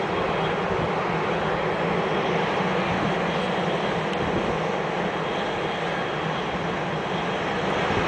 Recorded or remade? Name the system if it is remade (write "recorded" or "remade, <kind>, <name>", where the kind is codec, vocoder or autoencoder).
recorded